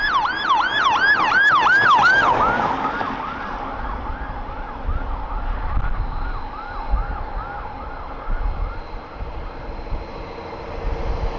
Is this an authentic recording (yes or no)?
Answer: yes